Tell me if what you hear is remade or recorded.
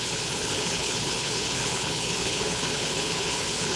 remade